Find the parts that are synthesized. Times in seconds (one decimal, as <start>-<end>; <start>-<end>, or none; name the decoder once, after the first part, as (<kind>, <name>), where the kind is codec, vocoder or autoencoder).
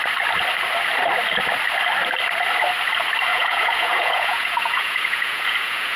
3.3-6.0 (vocoder, Vocos)